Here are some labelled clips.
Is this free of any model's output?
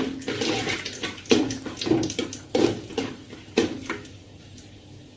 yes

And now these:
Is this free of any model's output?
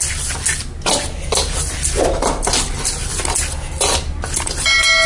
yes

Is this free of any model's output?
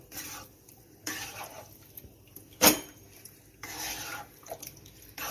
no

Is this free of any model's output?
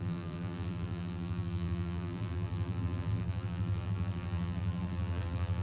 no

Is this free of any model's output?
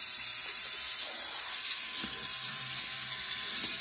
yes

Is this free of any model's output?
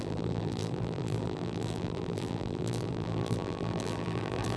no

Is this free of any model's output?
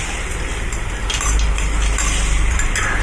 no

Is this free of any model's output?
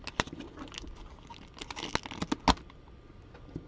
yes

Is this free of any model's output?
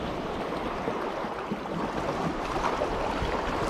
no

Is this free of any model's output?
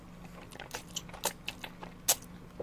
yes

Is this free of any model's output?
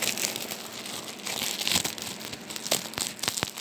yes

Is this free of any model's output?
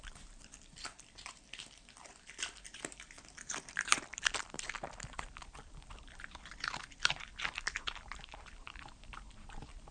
no